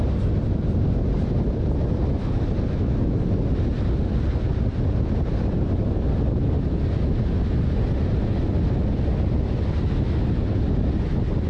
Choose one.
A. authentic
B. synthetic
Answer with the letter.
A